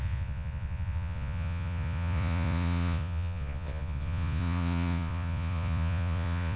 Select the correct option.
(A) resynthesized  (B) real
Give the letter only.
A